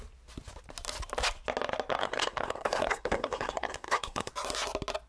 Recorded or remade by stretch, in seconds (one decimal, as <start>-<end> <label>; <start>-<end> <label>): 0.0-2.0 recorded; 2.0-4.3 remade; 4.3-5.1 recorded